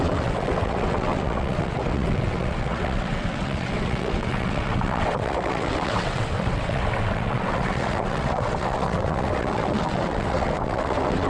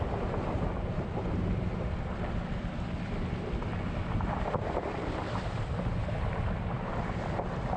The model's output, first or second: first